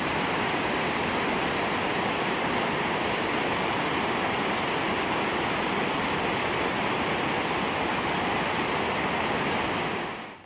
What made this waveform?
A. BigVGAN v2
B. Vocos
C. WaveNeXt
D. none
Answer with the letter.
D